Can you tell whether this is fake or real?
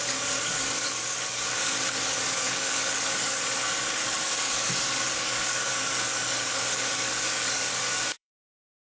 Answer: fake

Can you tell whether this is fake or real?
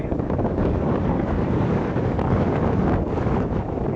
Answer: fake